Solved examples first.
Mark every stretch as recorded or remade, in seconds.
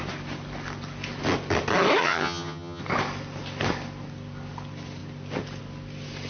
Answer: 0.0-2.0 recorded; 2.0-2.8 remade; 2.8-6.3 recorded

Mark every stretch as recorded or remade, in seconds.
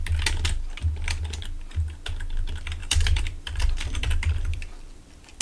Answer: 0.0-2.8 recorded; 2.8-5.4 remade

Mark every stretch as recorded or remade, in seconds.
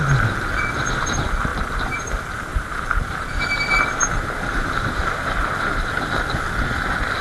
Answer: 0.0-1.5 recorded; 1.5-2.1 remade; 2.1-2.5 recorded; 2.5-3.7 remade; 3.7-4.5 recorded; 4.5-6.1 remade; 6.1-7.2 recorded